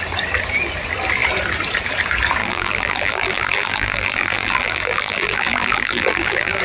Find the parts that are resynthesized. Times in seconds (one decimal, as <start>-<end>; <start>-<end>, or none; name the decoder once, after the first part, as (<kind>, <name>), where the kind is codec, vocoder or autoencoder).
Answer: 2.4-6.6 (vocoder, BigVGAN v2)